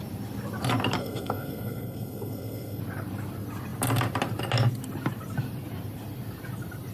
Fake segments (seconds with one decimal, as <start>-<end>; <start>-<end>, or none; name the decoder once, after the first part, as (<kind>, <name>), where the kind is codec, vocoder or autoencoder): 1.0-2.8 (codec, SNAC)